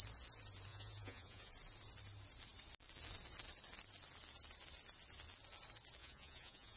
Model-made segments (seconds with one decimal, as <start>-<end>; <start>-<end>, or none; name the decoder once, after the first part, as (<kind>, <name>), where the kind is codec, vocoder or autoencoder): 0.7-1.5 (vocoder, Vocos); 6.0-6.8